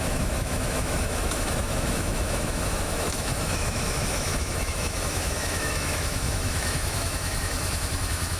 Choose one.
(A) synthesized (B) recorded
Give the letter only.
A